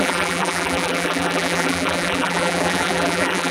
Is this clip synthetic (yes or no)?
yes